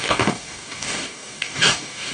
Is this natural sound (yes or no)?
no